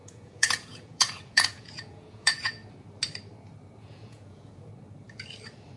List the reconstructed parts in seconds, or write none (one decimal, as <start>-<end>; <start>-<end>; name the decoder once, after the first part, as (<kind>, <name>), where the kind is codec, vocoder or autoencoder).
0.0-2.6 (vocoder, Vocos); 3.8-4.7